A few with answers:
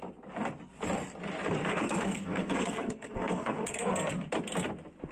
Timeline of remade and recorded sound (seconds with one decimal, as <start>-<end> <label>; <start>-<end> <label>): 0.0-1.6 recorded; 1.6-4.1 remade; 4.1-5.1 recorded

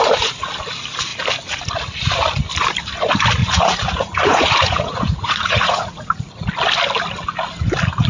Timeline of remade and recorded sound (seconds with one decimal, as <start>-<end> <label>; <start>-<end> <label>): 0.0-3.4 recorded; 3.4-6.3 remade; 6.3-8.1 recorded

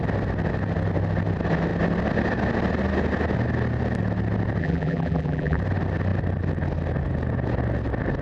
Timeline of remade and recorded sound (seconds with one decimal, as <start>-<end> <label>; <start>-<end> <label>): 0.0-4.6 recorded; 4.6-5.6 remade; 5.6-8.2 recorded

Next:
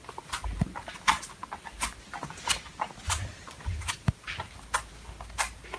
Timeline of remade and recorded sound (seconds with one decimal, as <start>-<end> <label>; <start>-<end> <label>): 0.0-5.8 recorded